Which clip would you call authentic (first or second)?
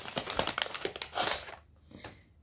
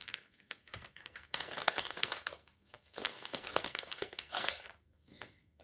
first